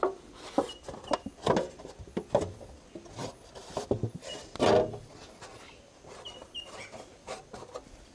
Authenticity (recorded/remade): recorded